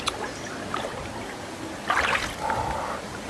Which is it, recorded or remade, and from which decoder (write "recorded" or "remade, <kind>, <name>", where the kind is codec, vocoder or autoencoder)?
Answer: recorded